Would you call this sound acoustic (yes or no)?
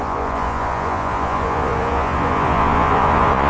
no